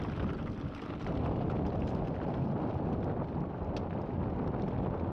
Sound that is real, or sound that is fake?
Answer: real